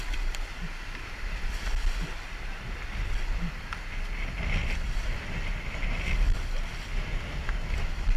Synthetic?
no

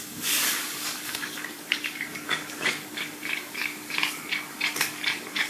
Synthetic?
yes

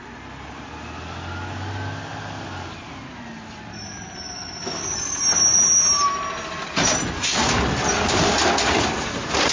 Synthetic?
no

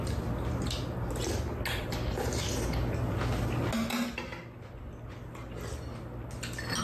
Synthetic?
no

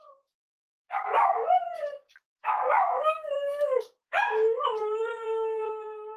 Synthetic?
yes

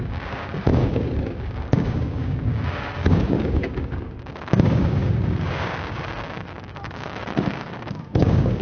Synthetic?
yes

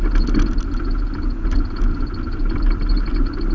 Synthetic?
no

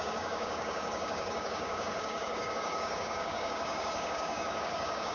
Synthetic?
yes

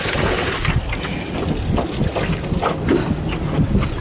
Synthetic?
no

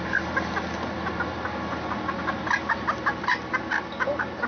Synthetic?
no